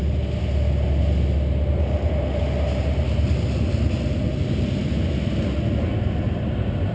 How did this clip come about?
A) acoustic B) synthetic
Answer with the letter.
A